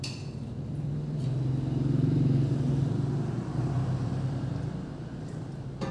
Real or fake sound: fake